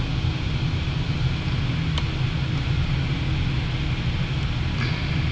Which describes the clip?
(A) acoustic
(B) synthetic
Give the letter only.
A